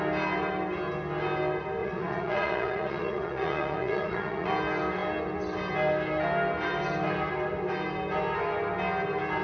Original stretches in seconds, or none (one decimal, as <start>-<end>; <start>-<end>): 0.0-1.8; 4.5-9.4

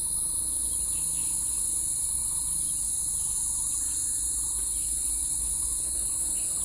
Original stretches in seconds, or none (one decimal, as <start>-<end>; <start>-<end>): 0.0-1.2; 1.8-5.2

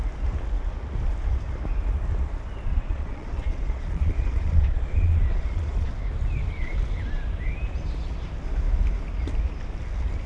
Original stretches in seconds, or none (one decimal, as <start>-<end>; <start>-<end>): 0.0-2.7; 5.9-10.3